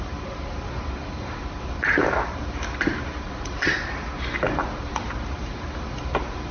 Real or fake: fake